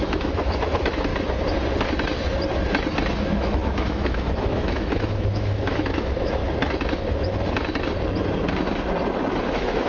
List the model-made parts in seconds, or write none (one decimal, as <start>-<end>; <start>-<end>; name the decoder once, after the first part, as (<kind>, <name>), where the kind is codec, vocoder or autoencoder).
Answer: 0.0-1.1 (autoencoder, DAC-VAE); 3.2-6.4; 9.3-9.9